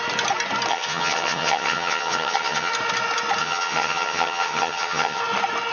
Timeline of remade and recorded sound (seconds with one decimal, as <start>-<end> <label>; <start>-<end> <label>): 0.0-0.7 recorded; 0.7-2.7 remade; 2.7-3.4 recorded; 3.4-5.2 remade; 5.2-5.7 recorded

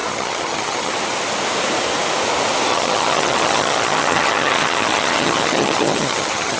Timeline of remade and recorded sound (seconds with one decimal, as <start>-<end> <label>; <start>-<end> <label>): 0.0-0.9 remade; 0.9-2.7 recorded; 2.7-6.6 remade

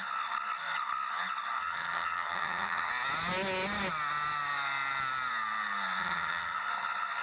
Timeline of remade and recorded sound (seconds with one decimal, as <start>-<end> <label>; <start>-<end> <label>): 0.0-1.6 recorded; 1.6-2.9 remade; 2.9-6.0 recorded; 6.0-6.6 remade; 6.6-7.2 recorded

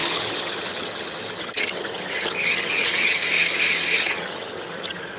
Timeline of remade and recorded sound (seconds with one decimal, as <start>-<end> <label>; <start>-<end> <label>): 0.0-3.2 remade; 3.2-4.0 recorded; 4.0-5.2 remade

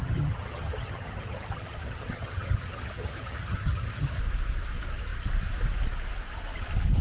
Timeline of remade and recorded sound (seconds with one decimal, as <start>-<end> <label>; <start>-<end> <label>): 0.0-4.2 remade; 4.2-7.0 recorded

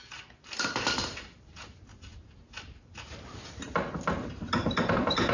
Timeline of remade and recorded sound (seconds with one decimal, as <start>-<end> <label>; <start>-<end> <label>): 0.0-5.3 recorded